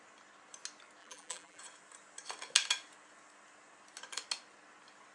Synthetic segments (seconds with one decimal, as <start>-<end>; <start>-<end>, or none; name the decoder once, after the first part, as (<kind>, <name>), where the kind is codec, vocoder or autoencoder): 1.0-1.6 (vocoder, BigVGAN v2)